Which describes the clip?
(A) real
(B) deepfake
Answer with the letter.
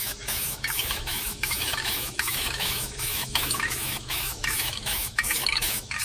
B